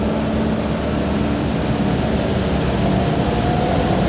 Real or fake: real